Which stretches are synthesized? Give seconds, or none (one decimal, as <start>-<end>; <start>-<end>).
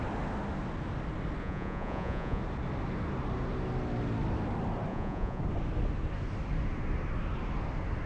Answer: 1.4-2.4; 4.9-5.4